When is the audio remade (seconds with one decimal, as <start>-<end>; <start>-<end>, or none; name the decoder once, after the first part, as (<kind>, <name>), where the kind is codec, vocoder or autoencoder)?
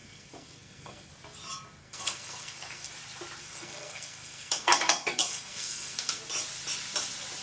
0.0-1.1 (codec, SNAC); 1.8-2.9; 3.4-6.2